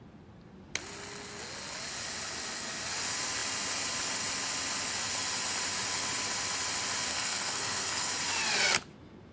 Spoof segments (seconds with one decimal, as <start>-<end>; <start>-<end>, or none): 7.1-8.1